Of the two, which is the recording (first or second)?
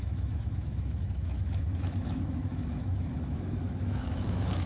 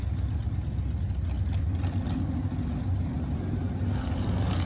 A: second